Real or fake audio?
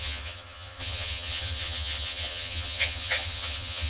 fake